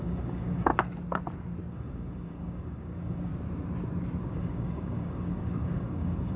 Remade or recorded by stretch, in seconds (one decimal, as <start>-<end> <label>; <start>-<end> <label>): 0.0-0.7 remade; 0.7-1.7 recorded; 1.7-3.3 remade; 3.3-4.3 recorded; 4.3-6.4 remade